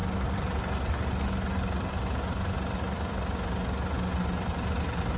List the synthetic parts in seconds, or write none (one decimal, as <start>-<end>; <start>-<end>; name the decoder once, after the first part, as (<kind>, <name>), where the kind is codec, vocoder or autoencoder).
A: 0.0-1.4 (vocoder, BigVGAN v2)